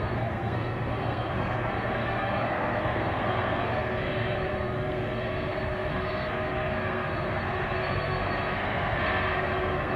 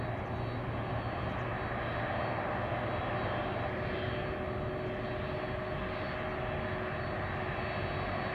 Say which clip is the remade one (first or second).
first